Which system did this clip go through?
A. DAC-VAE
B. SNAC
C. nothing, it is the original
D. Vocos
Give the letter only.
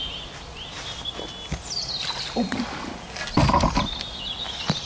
C